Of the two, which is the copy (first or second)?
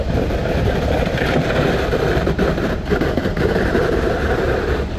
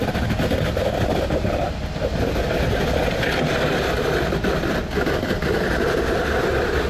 first